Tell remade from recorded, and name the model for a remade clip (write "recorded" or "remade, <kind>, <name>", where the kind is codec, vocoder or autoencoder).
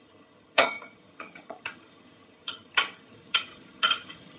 remade, vocoder, HiFi-GAN